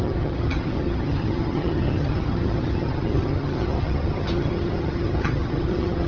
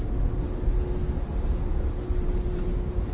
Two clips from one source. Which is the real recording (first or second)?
second